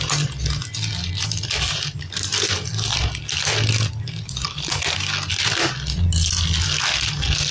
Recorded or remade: recorded